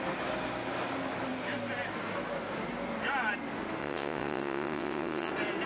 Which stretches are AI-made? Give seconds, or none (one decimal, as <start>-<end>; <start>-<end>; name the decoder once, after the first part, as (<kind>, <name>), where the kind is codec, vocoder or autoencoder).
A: 3.8-5.3 (vocoder, WaveNeXt)